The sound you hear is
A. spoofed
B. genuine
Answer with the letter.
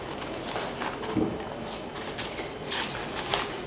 B